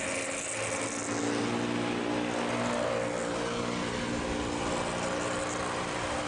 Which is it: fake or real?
real